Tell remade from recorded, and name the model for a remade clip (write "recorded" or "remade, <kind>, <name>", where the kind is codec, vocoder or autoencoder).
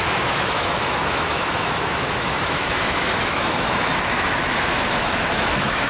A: remade, autoencoder, DAC-VAE